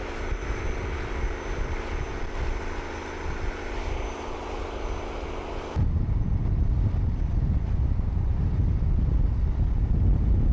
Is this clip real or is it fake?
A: real